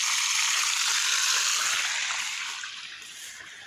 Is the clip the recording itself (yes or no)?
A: yes